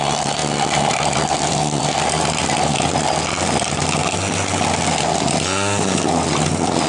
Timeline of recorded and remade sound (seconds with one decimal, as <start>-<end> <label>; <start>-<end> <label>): 0.0-6.9 recorded